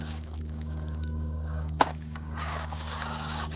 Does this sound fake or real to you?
fake